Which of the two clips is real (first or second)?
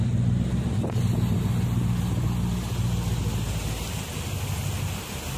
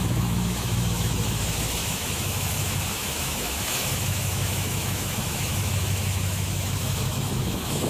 first